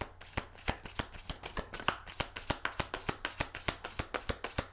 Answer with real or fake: real